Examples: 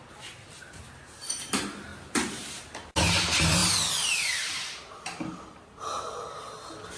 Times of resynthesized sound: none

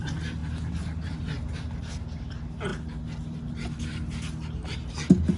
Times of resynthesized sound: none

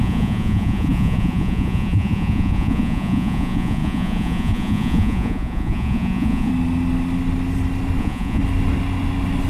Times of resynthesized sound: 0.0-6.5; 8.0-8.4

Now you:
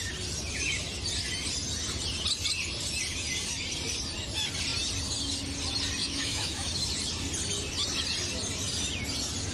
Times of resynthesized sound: 6.0-6.8

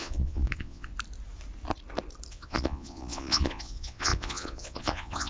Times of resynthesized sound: 0.0-0.9; 2.3-5.3